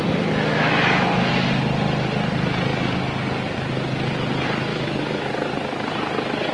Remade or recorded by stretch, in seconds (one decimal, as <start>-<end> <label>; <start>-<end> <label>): 0.0-0.5 recorded; 0.5-1.3 remade; 1.3-4.7 recorded; 4.7-5.3 remade; 5.3-6.5 recorded